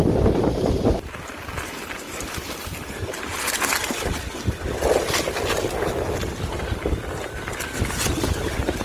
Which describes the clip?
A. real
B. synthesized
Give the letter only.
A